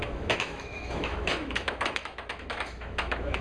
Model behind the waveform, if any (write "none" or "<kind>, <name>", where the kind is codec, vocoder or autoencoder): autoencoder, DAC-VAE